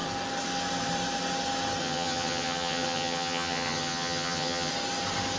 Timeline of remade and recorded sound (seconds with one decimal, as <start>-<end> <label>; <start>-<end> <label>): 0.0-1.8 recorded; 1.8-4.7 remade; 4.7-5.4 recorded